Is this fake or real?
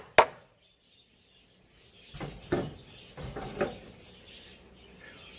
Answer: real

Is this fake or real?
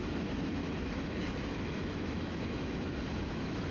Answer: fake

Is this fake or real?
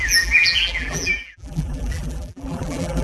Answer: fake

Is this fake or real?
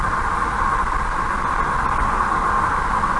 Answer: real